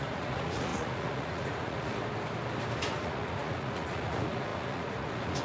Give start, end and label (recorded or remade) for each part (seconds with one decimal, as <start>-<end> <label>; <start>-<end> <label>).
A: 0.0-2.0 remade; 2.0-2.8 recorded; 2.8-5.4 remade